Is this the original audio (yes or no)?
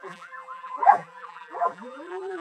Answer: no